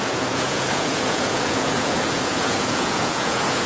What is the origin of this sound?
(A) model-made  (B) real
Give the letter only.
A